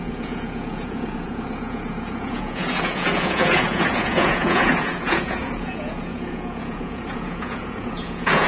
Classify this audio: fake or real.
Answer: fake